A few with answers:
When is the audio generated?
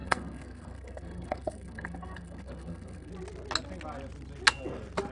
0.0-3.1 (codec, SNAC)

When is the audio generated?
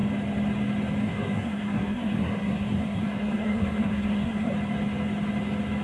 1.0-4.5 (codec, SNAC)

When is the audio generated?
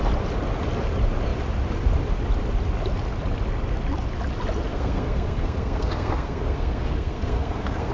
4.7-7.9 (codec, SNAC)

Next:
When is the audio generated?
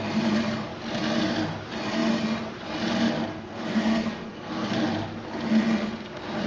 3.3-4.7 (codec, SNAC)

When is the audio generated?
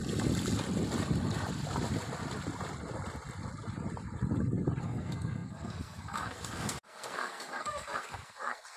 4.8-8.8 (codec, SNAC)